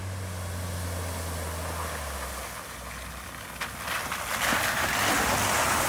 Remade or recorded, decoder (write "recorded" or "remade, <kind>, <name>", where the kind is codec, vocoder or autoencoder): recorded